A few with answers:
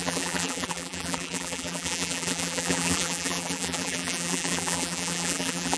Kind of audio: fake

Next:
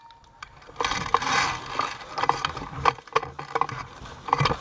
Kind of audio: real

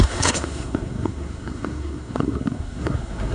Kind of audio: fake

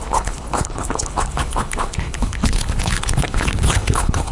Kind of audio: fake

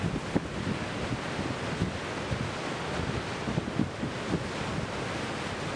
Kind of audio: real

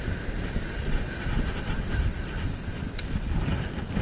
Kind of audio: real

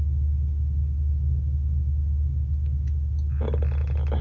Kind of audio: real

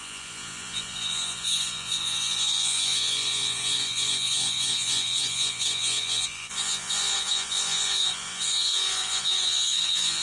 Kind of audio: fake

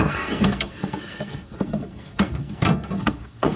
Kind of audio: fake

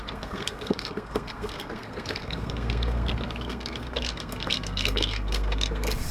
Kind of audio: fake